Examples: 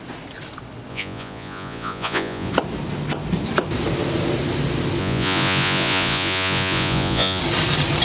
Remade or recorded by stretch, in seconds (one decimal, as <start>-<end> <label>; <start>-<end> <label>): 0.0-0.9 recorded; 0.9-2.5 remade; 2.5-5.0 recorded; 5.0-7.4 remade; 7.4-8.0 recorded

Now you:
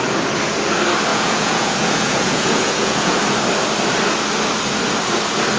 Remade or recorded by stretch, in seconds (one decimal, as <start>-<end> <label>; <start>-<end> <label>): 0.0-1.1 recorded; 1.1-3.2 remade; 3.2-5.6 recorded

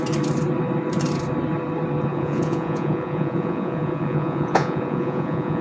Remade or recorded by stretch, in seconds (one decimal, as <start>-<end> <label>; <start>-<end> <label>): 0.0-2.1 recorded; 2.1-5.6 remade

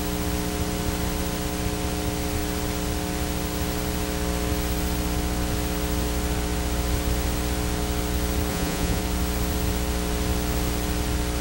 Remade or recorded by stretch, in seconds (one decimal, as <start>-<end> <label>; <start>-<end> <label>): 0.0-8.5 recorded; 8.5-9.0 remade; 9.0-11.4 recorded